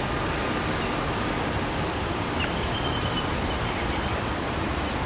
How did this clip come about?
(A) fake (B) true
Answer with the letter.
B